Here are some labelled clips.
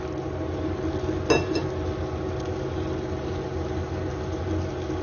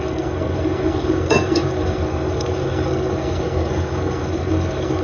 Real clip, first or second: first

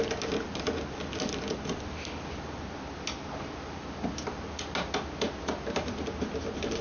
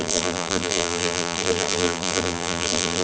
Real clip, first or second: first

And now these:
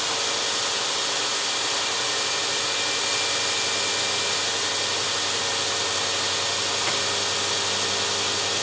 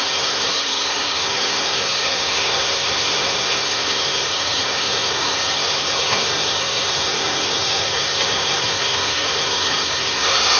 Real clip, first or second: first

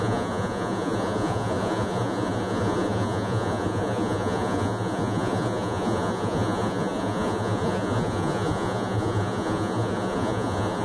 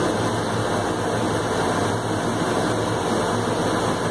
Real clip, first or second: second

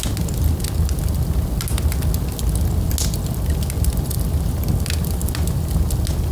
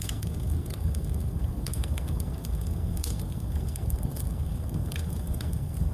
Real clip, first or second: first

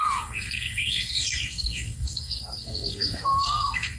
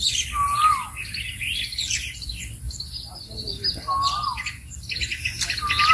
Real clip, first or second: second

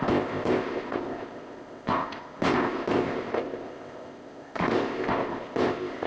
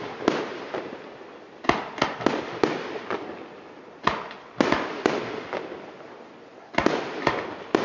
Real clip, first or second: second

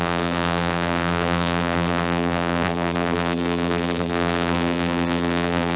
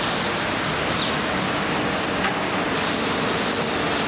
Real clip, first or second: second